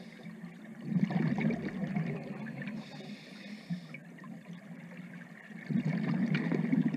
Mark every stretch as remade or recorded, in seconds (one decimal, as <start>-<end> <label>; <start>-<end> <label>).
0.0-7.0 recorded